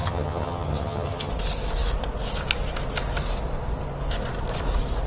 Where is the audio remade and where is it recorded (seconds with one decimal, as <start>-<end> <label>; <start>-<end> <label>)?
0.0-1.3 remade; 1.3-5.1 recorded